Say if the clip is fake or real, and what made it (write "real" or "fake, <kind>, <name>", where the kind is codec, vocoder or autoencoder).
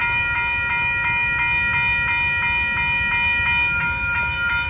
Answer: real